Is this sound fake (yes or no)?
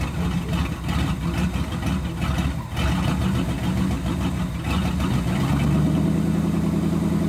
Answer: no